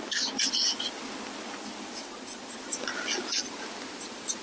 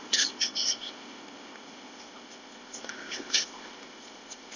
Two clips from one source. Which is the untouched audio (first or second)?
first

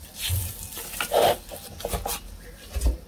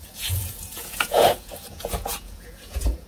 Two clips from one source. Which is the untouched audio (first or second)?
first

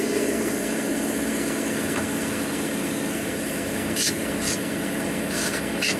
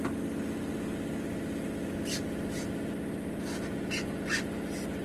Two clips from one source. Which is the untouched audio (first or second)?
second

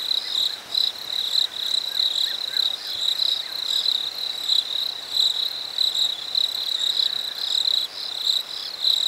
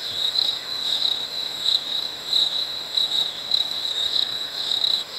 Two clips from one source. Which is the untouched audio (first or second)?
first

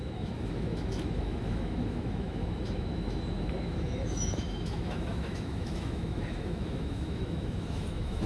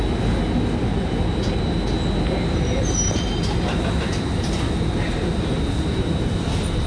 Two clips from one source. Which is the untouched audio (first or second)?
second